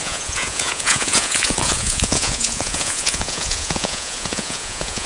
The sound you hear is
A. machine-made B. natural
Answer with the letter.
A